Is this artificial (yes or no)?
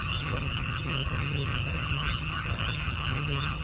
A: yes